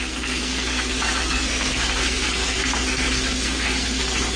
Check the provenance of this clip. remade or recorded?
remade